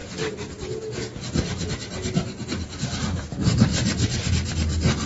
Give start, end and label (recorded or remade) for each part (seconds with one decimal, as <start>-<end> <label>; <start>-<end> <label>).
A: 0.0-5.1 recorded